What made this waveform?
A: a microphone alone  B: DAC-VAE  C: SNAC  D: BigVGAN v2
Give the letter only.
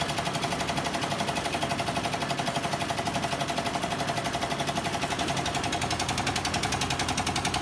A